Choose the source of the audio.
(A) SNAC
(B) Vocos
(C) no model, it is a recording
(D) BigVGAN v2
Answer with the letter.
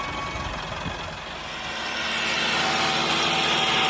C